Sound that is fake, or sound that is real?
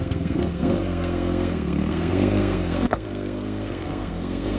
fake